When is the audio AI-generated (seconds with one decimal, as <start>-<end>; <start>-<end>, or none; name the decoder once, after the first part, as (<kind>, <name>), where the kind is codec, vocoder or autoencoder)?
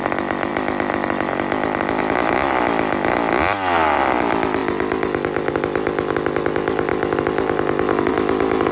none